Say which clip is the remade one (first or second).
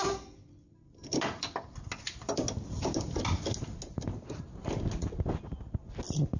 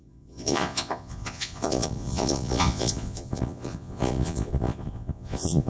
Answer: second